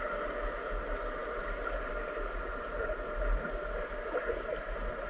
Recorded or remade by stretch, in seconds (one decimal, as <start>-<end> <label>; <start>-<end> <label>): 0.0-5.1 recorded